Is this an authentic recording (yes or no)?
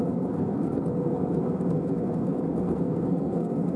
no